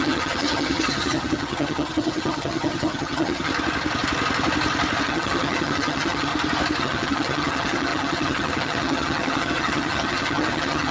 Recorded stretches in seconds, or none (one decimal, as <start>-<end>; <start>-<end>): 3.5-5.0; 6.3-6.8